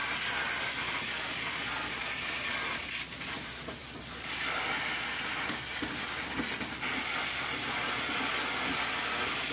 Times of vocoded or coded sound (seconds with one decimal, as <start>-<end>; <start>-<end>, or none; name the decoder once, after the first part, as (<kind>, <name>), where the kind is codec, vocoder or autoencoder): none